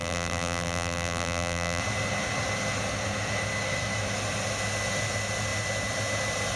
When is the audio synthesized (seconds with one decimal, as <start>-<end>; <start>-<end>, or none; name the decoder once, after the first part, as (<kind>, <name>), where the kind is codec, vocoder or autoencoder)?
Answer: 0.0-1.8 (vocoder, BigVGAN v2)